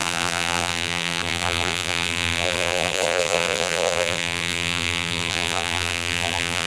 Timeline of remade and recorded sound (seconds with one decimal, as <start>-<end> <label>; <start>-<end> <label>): 0.0-6.7 remade

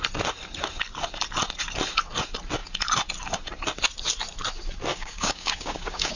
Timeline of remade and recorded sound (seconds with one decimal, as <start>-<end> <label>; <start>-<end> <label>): 0.0-4.9 recorded; 4.9-6.2 remade

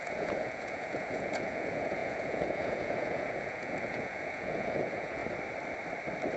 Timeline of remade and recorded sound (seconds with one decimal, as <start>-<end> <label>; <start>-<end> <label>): 0.0-5.2 remade; 5.2-6.4 recorded